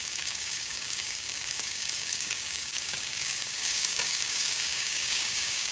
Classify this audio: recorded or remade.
remade